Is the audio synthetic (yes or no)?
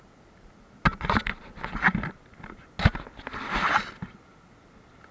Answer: no